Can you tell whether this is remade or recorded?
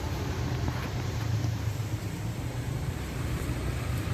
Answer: remade